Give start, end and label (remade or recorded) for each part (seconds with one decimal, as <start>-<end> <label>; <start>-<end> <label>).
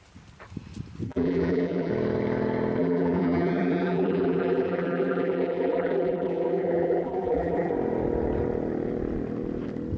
0.0-1.1 recorded; 1.1-1.9 remade; 1.9-2.8 recorded; 2.8-7.7 remade; 7.7-10.0 recorded